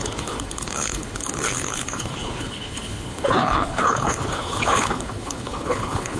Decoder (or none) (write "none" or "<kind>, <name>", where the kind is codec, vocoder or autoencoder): codec, HILCodec